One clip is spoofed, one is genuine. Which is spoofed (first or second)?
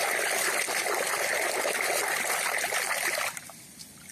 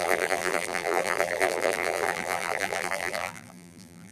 second